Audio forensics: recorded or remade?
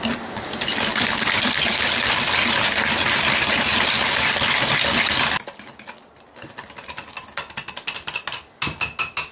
recorded